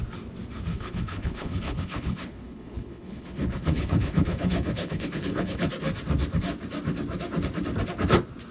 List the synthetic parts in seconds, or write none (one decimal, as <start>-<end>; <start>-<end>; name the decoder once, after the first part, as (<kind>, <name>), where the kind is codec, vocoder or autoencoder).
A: 0.7-5.7 (codec, HILCodec)